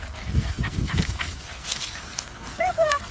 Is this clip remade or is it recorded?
remade